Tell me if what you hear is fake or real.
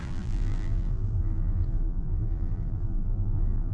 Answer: fake